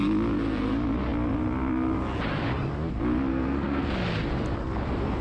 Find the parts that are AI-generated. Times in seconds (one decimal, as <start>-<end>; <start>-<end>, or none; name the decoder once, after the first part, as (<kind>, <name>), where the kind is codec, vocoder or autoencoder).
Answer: 3.3-3.9 (codec, SNAC)